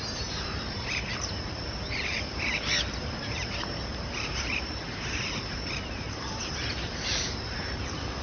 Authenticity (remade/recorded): remade